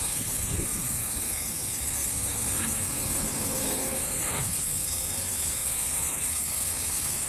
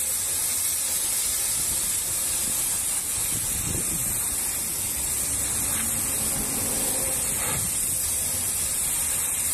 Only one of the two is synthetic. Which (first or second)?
first